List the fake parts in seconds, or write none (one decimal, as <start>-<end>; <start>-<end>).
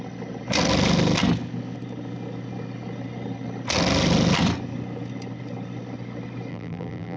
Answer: 6.5-7.2